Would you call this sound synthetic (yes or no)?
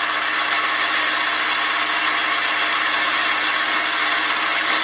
no